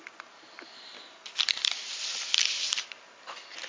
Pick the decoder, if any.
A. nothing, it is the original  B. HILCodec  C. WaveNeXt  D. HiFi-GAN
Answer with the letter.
A